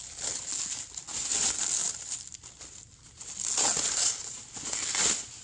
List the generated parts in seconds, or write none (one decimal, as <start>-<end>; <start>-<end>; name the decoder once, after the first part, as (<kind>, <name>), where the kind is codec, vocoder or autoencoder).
none